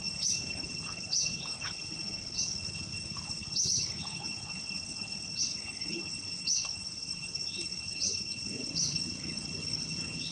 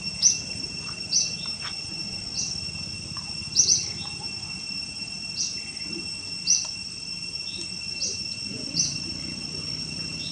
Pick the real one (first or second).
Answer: second